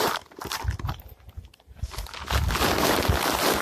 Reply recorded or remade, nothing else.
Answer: recorded